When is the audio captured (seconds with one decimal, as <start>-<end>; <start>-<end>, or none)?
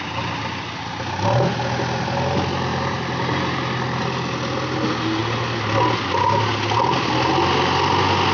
0.0-8.3